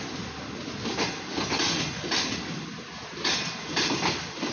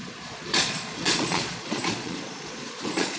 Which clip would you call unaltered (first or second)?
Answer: first